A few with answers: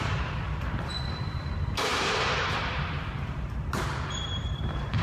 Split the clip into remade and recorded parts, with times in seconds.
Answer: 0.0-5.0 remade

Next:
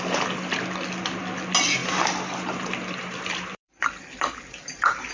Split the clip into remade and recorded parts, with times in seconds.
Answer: 0.0-1.8 recorded; 1.8-5.1 remade